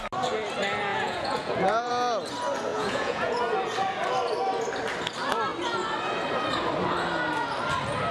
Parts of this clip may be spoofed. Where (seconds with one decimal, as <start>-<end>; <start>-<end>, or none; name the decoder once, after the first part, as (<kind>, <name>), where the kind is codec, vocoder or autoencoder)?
0.9-1.9 (vocoder, Vocos); 2.7-3.4